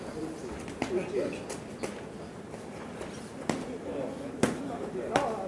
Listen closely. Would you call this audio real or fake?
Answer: real